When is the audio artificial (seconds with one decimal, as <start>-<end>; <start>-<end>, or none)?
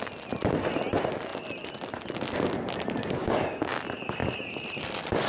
3.2-3.7